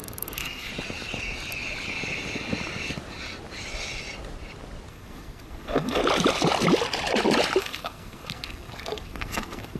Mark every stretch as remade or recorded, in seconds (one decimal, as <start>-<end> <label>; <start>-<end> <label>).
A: 0.0-0.7 remade; 0.7-4.9 recorded; 4.9-6.0 remade; 6.0-7.6 recorded; 7.6-9.8 remade